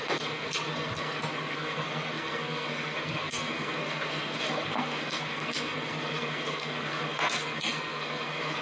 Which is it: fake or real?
fake